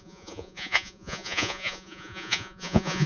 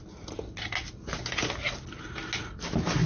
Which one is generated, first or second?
first